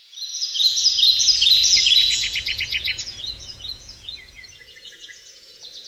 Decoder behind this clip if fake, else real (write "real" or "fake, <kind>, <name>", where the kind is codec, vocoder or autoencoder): fake, vocoder, Vocos